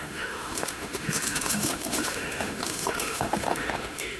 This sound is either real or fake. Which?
fake